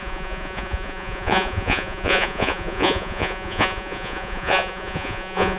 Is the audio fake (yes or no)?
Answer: yes